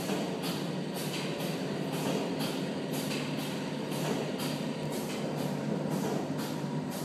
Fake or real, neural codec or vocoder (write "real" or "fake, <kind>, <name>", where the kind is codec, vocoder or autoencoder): real